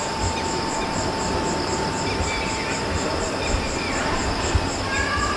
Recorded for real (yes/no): no